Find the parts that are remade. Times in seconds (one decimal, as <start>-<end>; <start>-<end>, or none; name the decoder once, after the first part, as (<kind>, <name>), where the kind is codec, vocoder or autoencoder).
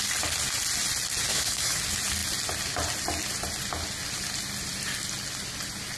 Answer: 1.3-1.8 (autoencoder, DAC-VAE)